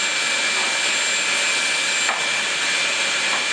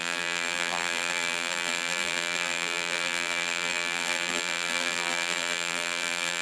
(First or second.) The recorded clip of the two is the first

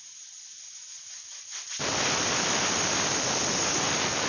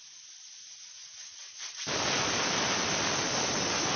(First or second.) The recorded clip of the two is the first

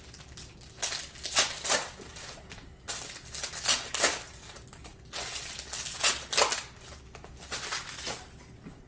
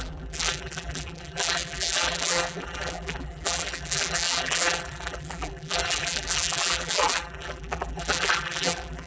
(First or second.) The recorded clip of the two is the first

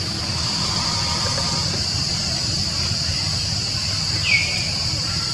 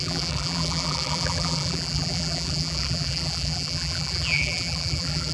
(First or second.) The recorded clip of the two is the first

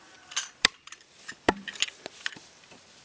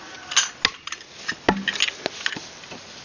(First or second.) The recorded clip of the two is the second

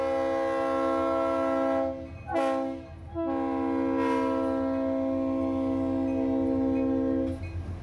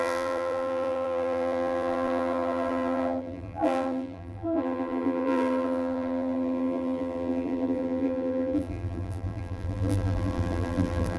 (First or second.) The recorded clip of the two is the first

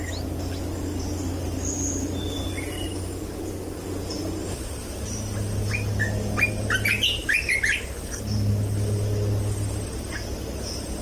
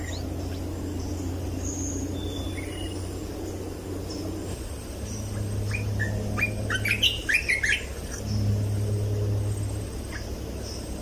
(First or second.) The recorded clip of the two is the first